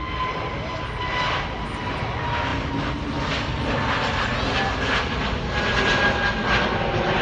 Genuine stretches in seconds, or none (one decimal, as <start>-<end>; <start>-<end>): 0.0-7.2